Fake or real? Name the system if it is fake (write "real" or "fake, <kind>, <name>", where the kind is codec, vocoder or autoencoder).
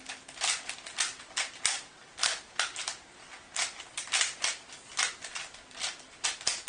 real